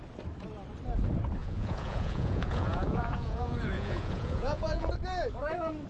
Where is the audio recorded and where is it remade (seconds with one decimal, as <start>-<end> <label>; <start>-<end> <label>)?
0.0-1.4 recorded; 1.4-4.9 remade; 4.9-5.9 recorded